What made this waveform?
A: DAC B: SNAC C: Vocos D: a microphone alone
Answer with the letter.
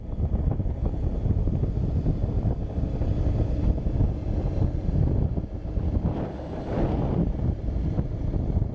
D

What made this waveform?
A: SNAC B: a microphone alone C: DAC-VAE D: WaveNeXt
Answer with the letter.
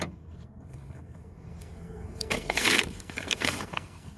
A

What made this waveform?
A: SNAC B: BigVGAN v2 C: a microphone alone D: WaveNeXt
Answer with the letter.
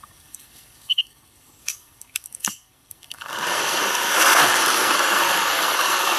A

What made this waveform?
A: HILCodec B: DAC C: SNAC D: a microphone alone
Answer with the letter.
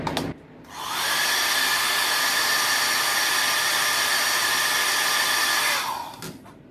D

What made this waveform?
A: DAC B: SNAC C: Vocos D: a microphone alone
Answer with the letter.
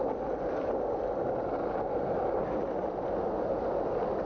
D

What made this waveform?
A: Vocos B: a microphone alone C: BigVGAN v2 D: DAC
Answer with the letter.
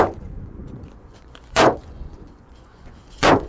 A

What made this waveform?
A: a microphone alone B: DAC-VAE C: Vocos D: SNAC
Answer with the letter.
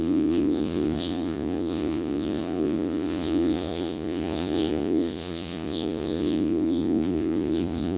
C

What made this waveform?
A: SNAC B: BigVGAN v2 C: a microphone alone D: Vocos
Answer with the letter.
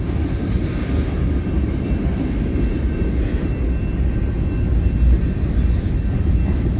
C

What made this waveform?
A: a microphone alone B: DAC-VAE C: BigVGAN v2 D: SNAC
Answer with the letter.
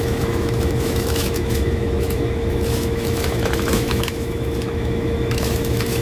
B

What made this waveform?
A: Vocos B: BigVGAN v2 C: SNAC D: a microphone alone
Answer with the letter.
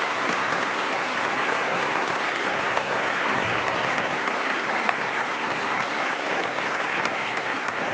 C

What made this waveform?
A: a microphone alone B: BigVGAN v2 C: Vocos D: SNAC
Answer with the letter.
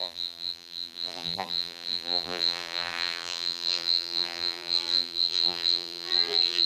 B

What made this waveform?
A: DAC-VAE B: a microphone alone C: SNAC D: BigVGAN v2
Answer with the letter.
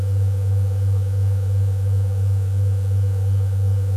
A